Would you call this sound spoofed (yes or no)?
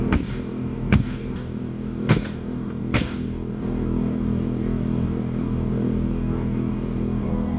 yes